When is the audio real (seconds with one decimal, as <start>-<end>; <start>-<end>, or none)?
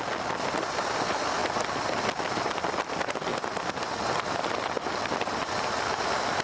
0.0-6.4